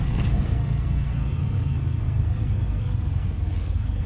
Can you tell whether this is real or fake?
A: fake